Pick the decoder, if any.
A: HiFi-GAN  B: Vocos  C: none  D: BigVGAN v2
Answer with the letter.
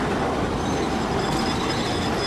C